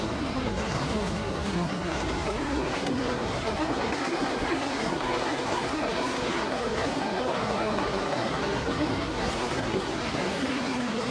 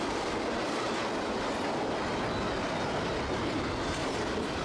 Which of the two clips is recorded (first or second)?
second